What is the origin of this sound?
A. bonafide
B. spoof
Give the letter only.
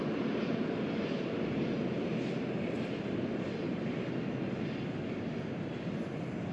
A